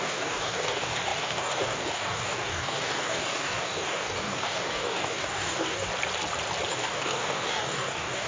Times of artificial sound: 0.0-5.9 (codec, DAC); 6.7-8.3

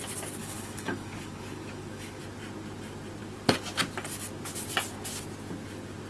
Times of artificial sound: 0.4-2.2 (codec, DAC)

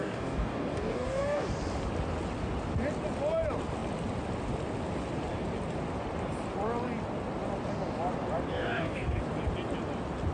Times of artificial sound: 0.0-1.5 (codec, DAC); 8.5-9.2

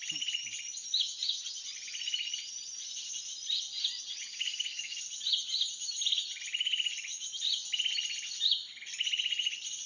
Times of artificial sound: 4.3-5.0 (codec, DAC)

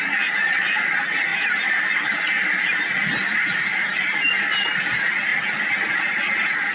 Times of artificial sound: none

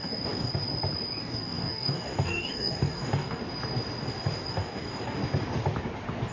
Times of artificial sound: 0.0-0.5 (codec, DAC); 1.2-3.4; 4.5-5.2